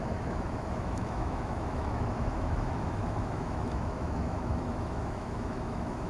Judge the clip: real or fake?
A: fake